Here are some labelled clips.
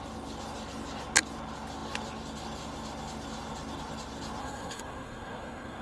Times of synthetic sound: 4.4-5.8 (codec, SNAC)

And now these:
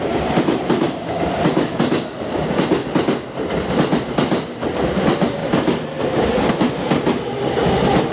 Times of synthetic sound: none

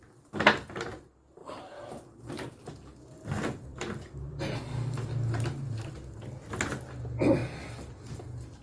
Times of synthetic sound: 1.4-2.3 (vocoder, BigVGAN v2); 3.7-4.6

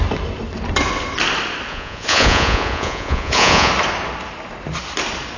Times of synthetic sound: 1.7-3.7 (vocoder, Vocos)

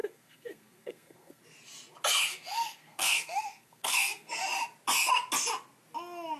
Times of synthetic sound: 0.0-1.4 (codec, SNAC); 2.3-4.4

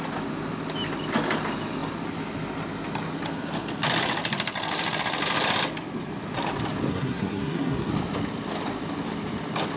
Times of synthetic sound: 6.9-7.9 (codec, SNAC)